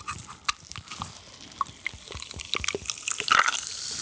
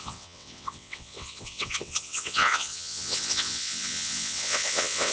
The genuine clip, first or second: first